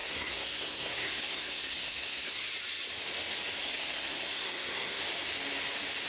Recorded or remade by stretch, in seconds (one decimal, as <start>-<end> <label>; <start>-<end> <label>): 0.0-2.5 remade; 2.5-3.6 recorded; 3.6-5.0 remade; 5.0-6.1 recorded